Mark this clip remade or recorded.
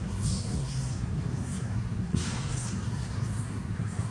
remade